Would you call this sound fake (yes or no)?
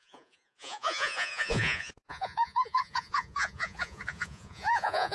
yes